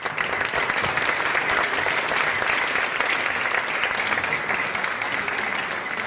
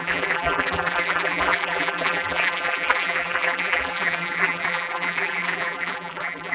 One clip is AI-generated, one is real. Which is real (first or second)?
first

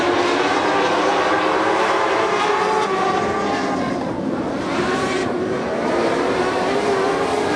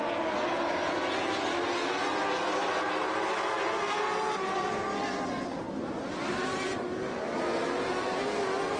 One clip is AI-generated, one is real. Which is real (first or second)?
second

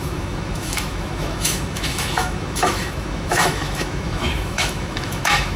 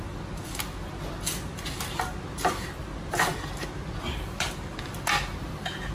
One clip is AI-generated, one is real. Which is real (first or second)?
second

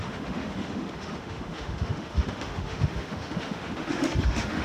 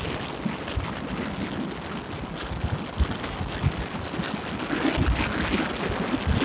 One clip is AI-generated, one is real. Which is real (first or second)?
second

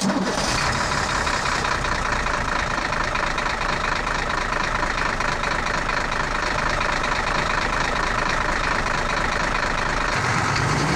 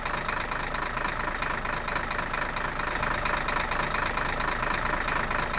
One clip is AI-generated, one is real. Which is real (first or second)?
second